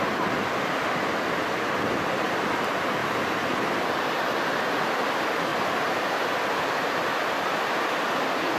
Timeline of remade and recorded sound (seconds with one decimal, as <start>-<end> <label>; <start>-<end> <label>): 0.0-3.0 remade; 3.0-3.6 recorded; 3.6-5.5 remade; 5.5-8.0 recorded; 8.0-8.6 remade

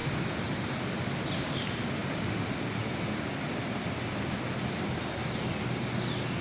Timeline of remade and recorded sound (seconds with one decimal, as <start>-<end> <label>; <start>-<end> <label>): 0.0-6.4 recorded

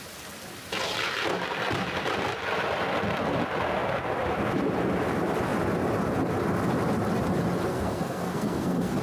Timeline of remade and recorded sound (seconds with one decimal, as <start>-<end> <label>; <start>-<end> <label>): 0.0-7.7 recorded; 7.7-9.0 remade

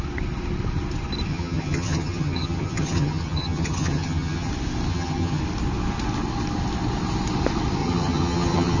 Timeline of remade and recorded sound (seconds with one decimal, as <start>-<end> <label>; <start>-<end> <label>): 0.0-1.3 recorded; 1.3-4.5 remade; 4.5-4.9 recorded; 4.9-5.4 remade; 5.4-7.8 recorded; 7.8-8.8 remade